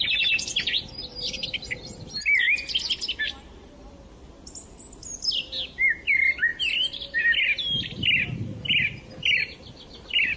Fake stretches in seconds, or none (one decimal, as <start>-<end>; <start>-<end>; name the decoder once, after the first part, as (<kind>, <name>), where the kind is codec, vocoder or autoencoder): none